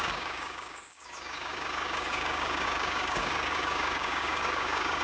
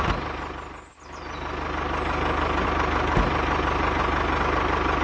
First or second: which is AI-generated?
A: first